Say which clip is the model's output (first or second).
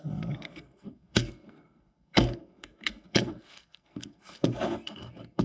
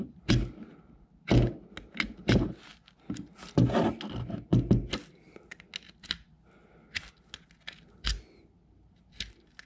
first